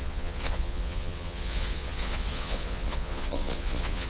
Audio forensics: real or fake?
fake